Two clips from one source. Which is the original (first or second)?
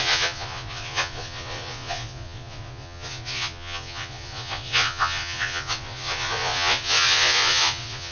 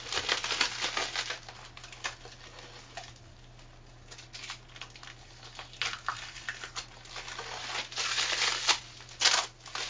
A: second